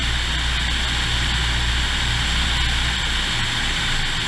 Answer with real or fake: real